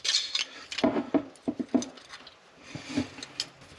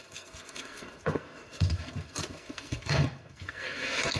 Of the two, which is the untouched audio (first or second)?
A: first